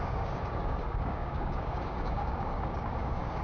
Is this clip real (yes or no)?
no